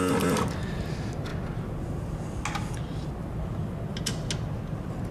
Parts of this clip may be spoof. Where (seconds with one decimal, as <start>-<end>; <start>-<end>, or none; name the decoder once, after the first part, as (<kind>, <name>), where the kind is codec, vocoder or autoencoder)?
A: none